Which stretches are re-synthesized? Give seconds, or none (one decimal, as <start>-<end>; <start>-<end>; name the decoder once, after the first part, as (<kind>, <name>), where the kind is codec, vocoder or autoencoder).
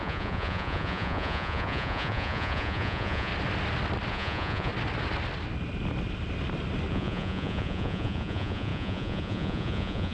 0.0-3.3 (vocoder, Vocos); 4.1-4.7; 6.9-10.1